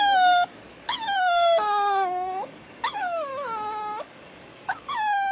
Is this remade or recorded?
remade